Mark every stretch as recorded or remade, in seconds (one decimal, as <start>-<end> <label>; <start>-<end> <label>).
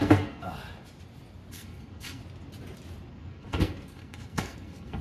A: 0.0-0.6 remade; 0.6-1.5 recorded; 1.5-2.2 remade; 2.2-3.1 recorded; 3.1-5.0 remade